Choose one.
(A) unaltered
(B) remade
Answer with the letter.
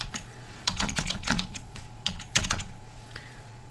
B